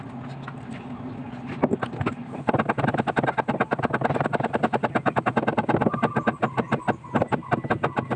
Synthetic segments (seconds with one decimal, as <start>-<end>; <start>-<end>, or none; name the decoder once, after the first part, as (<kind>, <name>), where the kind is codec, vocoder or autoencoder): none